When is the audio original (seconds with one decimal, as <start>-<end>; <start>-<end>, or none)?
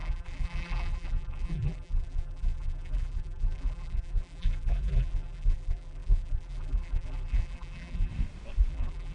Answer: 8.1-8.7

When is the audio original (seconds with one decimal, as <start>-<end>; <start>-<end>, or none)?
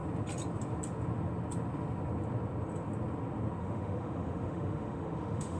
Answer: 0.0-3.6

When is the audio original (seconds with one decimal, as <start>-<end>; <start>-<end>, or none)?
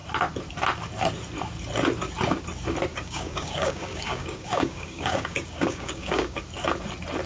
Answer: 0.0-2.9; 6.4-7.3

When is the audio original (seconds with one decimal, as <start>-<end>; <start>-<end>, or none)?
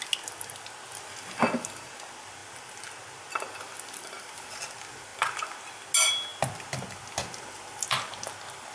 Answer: 0.0-8.7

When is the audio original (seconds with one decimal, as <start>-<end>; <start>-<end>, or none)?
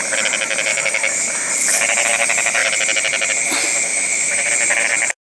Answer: 0.0-0.7; 1.5-3.9; 4.5-5.3